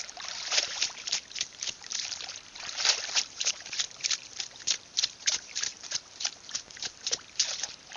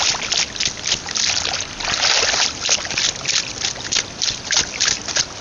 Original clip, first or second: second